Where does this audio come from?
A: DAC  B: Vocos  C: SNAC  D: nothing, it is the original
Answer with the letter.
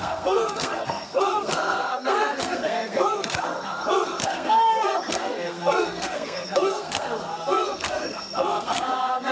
C